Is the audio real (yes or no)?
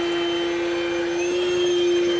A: yes